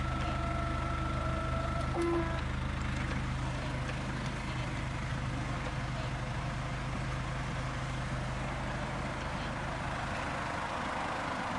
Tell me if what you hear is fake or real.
real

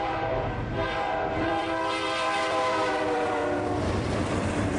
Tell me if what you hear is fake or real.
fake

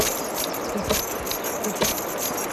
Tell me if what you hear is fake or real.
real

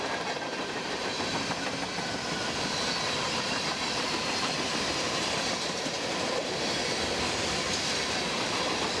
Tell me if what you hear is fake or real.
fake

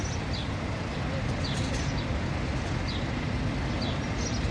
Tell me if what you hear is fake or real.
real